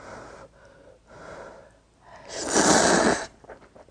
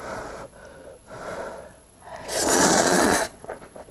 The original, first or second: first